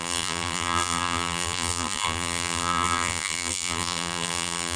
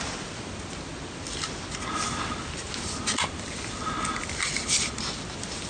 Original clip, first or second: second